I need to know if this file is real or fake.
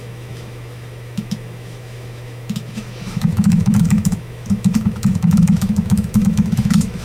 fake